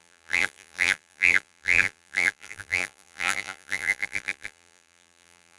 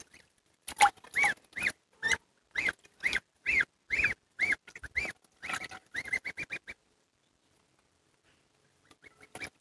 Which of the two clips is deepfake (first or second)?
first